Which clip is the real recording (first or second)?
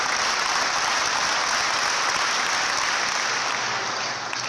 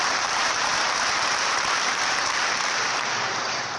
first